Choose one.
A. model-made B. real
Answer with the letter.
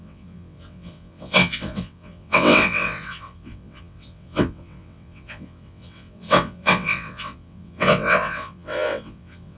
A